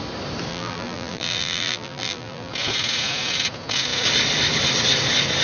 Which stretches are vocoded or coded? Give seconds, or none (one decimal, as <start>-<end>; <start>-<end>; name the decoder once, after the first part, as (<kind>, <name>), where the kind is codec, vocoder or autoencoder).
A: 0.5-2.5 (vocoder, BigVGAN v2)

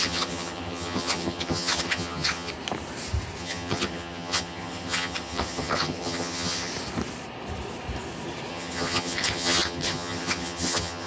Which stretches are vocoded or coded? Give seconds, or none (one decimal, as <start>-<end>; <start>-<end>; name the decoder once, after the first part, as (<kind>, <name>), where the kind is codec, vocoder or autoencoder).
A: 0.0-2.5 (vocoder, HiFi-GAN); 3.4-6.7; 8.5-11.1

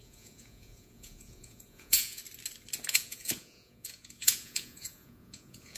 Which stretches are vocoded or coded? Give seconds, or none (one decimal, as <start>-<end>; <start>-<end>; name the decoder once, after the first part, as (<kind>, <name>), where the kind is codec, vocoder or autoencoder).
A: 0.0-2.2 (vocoder, Vocos); 2.9-5.8

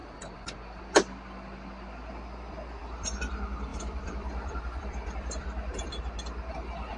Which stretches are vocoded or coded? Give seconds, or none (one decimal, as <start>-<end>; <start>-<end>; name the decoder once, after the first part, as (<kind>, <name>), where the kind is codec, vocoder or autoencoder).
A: 0.0-0.8 (vocoder, BigVGAN v2); 3.7-6.0